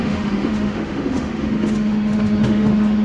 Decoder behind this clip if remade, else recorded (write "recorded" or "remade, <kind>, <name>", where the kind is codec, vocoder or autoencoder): remade, autoencoder, DAC-VAE